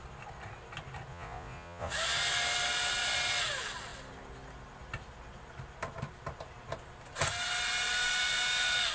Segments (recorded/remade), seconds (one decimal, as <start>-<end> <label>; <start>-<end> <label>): 0.0-1.1 recorded; 1.1-1.9 remade; 1.9-8.9 recorded